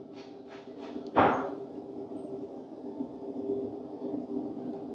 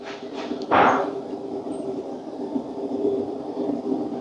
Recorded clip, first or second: first